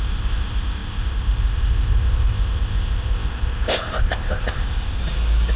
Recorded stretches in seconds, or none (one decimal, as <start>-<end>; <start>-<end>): 5.0-5.6